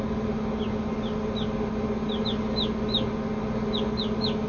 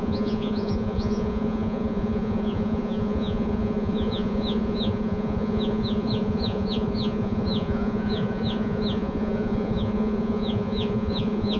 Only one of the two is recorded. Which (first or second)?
first